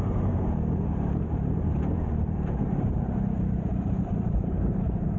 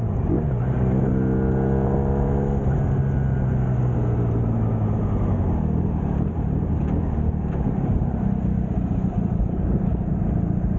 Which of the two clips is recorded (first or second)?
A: second